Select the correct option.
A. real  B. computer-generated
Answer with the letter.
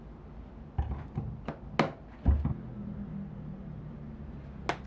A